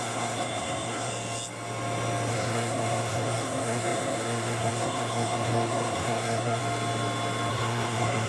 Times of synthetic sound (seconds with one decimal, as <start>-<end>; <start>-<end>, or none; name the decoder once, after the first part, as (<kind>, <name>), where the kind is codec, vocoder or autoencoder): 0.0-1.1 (codec, SNAC); 2.3-6.6; 7.5-8.3